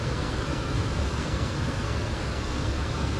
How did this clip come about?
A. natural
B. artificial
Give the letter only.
B